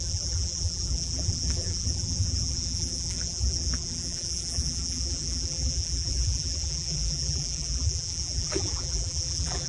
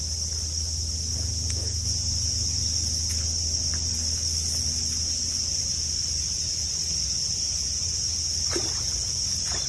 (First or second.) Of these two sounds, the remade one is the first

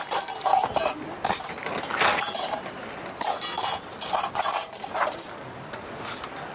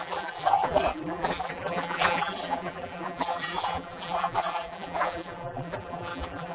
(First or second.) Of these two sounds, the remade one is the second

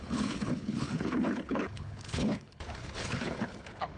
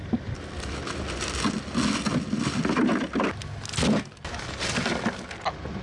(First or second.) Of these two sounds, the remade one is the first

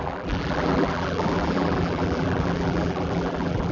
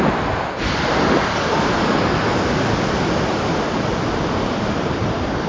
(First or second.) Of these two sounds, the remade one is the first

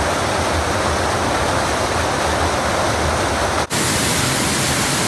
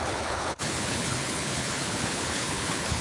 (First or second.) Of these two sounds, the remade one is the second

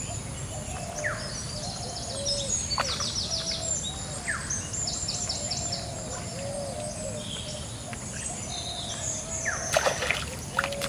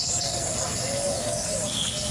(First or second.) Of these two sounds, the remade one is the second